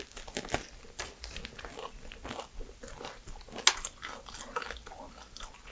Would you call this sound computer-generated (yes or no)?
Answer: no